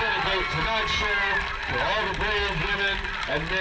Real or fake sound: real